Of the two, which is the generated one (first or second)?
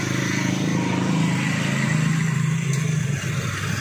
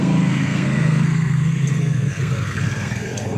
second